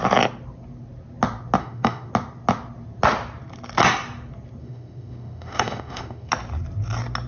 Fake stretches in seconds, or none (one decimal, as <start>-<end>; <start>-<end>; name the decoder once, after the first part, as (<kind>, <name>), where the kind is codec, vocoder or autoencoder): 1.6-2.1 (autoencoder, DAC-VAE); 4.6-6.3